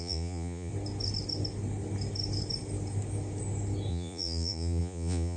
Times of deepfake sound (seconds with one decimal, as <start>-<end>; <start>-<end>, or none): 0.0-0.7; 3.9-5.4